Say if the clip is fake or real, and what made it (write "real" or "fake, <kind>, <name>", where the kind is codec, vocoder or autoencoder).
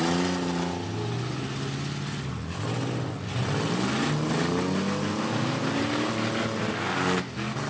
real